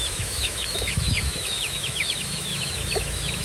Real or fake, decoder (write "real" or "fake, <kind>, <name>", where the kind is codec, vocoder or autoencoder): fake, autoencoder, DAC-VAE